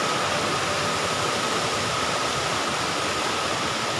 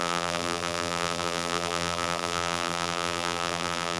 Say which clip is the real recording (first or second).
first